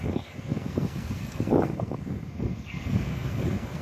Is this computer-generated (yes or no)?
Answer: yes